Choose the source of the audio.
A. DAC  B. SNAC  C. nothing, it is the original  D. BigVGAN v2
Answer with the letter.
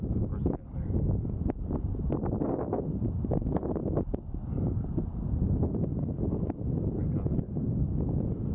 D